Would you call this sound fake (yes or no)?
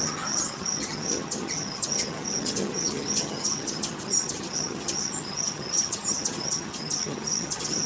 yes